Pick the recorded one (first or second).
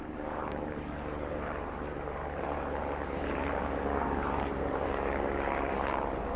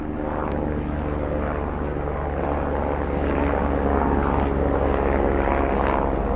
second